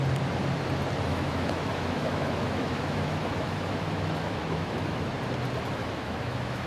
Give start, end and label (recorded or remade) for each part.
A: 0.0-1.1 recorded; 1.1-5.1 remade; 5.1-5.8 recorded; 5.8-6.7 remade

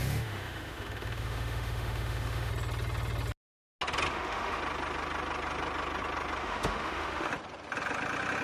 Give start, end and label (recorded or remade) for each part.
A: 0.0-2.5 remade; 2.5-4.1 recorded; 4.1-4.6 remade; 4.6-6.4 recorded; 6.4-7.3 remade; 7.3-8.4 recorded

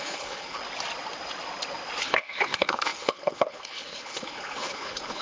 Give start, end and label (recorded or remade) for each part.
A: 0.0-0.6 remade; 0.6-2.0 recorded; 2.0-5.2 remade